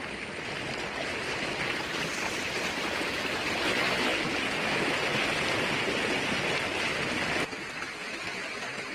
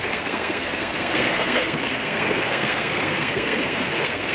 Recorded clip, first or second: first